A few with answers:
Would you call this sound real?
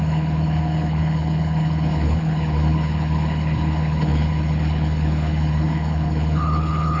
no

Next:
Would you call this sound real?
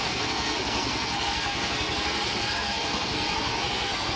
no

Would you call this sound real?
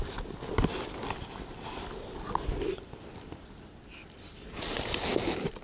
yes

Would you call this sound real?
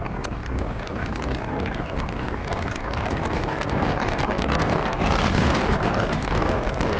no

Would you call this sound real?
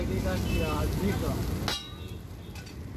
yes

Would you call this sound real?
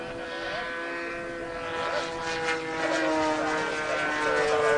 yes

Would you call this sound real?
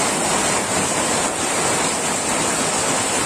yes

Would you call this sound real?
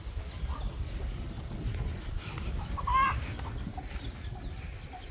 yes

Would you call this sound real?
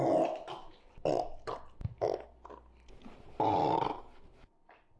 yes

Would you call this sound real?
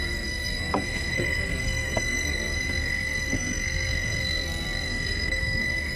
no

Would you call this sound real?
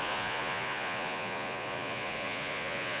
no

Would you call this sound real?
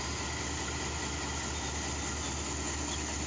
yes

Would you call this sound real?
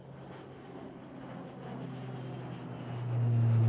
yes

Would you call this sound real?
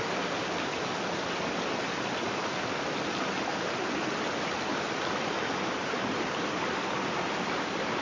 yes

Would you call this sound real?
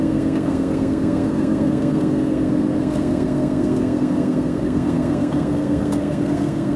no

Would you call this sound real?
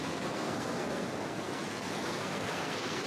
no